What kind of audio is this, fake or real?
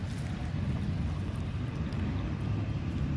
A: real